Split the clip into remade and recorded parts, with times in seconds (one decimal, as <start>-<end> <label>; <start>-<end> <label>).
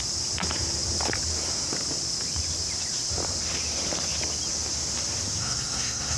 0.0-5.4 recorded; 5.4-6.2 remade